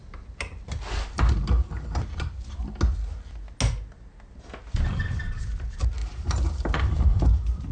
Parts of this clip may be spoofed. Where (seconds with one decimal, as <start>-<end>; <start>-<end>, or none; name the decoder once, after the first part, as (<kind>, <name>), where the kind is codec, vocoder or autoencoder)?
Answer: 6.0-7.7 (vocoder, BigVGAN v2)